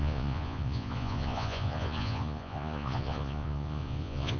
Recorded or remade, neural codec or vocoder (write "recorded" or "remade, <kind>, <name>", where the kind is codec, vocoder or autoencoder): remade, vocoder, Vocos